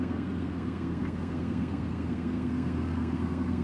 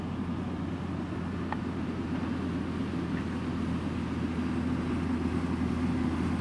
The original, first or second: second